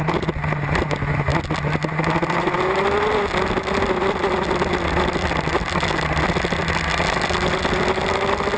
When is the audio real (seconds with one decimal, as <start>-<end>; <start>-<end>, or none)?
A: 0.0-8.6